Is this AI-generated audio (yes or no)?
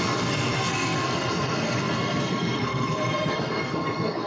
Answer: yes